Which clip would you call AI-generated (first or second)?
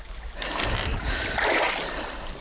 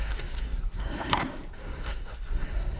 second